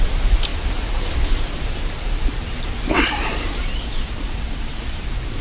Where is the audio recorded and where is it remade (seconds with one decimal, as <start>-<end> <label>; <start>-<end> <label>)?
0.0-5.4 remade